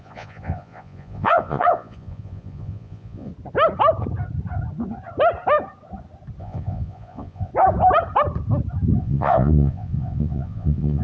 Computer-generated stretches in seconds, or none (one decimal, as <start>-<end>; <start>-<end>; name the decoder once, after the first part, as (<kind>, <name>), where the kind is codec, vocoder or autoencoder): 0.0-3.3 (vocoder, Vocos); 6.4-7.5; 9.0-11.0